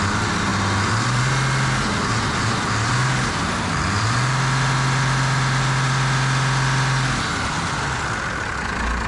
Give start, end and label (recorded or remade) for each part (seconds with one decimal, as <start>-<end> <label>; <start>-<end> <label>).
0.0-9.1 recorded

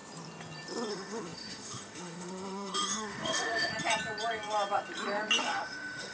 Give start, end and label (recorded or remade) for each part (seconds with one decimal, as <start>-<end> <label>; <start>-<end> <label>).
0.0-0.9 recorded; 0.9-3.7 remade; 3.7-5.4 recorded; 5.4-6.1 remade